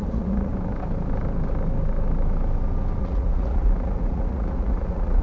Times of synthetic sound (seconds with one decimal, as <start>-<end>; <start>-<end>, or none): 0.0-0.5; 3.0-5.2